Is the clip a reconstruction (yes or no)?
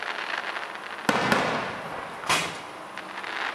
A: no